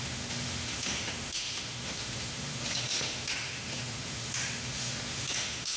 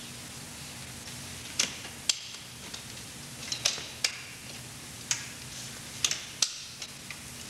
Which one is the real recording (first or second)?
second